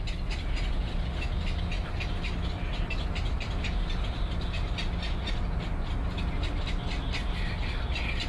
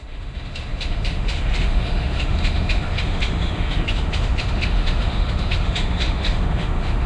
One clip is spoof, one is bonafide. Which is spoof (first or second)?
second